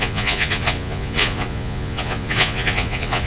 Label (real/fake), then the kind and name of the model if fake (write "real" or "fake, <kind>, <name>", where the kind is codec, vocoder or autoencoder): fake, vocoder, Vocos